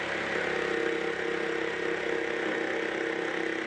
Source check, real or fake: real